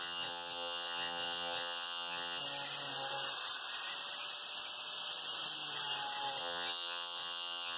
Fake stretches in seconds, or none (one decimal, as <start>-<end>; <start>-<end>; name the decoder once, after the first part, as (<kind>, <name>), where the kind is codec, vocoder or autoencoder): 0.0-2.4 (vocoder, WaveNeXt); 6.4-7.8